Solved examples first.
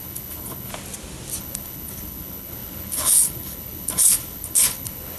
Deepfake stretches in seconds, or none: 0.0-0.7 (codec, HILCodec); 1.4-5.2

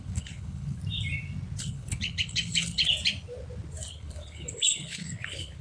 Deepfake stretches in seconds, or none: 0.0-0.8 (codec, HILCodec); 1.6-2.9; 3.9-5.6